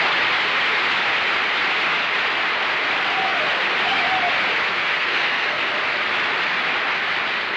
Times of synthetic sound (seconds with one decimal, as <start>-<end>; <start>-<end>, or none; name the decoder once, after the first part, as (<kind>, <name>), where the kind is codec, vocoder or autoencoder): 4.7-5.6 (codec, SNAC)